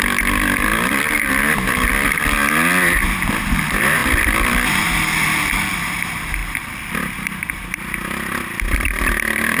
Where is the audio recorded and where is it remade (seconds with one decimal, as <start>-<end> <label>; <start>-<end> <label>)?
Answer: 0.0-0.7 recorded; 0.7-1.3 remade; 1.3-6.4 recorded; 6.4-9.6 remade